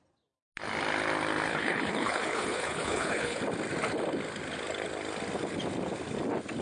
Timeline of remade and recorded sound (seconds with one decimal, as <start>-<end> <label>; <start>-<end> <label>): 0.0-1.5 recorded; 1.5-3.4 remade; 3.4-6.6 recorded